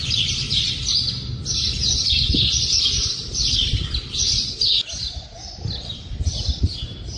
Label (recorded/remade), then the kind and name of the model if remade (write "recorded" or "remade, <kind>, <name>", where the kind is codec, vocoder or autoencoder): recorded